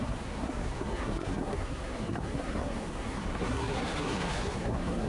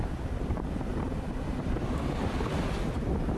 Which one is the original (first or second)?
second